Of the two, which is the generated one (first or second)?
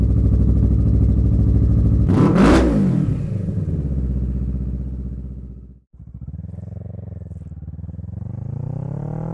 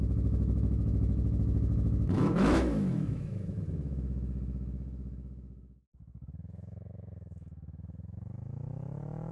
second